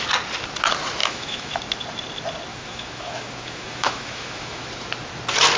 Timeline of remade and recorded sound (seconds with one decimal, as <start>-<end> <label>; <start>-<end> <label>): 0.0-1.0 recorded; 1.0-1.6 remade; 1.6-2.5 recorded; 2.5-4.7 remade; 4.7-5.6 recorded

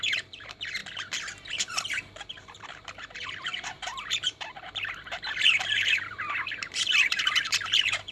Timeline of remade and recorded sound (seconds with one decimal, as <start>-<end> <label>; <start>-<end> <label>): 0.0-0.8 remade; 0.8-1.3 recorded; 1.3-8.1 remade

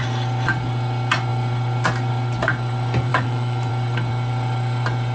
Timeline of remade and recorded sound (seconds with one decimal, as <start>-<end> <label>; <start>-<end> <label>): 0.0-3.1 recorded; 3.1-3.7 remade; 3.7-5.1 recorded